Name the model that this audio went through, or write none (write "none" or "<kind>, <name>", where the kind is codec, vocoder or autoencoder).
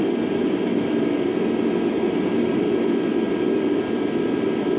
none